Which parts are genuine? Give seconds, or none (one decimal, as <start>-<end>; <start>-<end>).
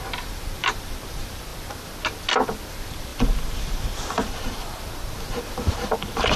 1.5-2.7